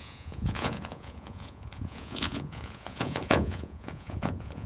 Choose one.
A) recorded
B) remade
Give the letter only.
B